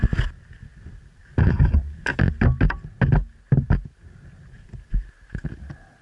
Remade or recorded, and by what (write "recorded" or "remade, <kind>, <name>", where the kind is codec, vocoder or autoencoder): recorded